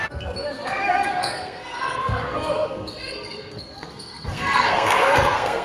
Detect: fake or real fake